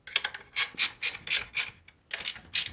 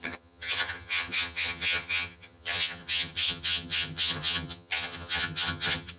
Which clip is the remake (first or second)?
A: second